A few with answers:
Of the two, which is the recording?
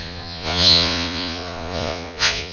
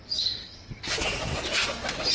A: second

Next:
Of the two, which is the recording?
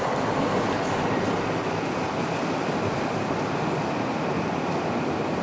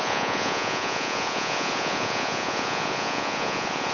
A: first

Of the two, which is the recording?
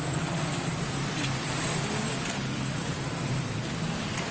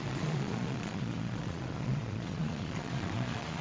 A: first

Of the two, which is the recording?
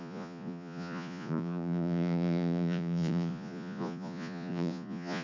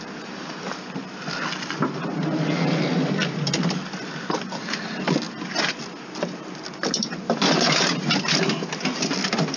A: second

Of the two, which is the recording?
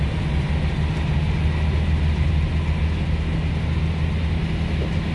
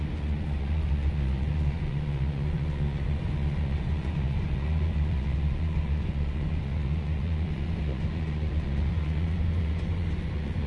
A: first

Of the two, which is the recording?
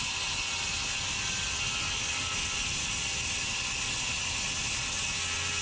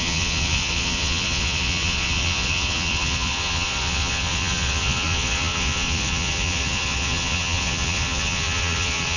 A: first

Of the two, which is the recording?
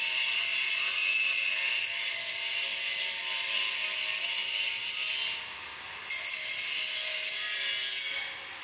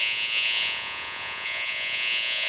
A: first